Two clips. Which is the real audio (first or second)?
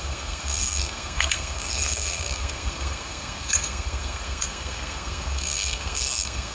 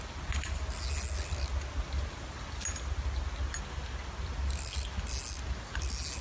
second